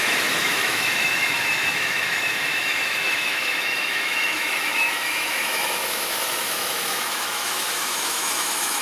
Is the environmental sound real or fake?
fake